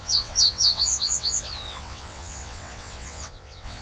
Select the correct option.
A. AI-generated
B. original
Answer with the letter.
A